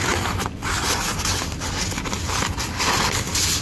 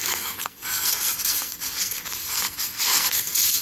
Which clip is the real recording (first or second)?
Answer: first